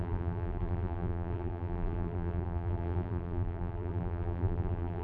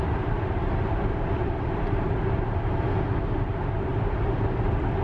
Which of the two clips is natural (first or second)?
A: second